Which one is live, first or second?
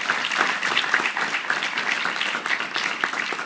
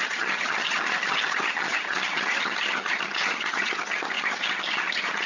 first